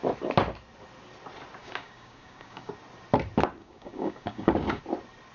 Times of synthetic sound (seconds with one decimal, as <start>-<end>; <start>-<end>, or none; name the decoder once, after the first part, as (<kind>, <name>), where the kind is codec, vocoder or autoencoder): 1.6-2.7 (codec, DAC); 3.6-4.8